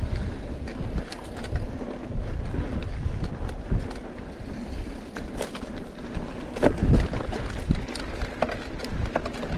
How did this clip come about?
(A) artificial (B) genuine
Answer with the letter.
B